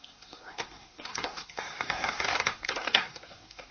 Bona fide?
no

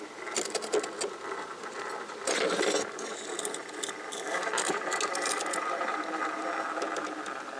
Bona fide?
yes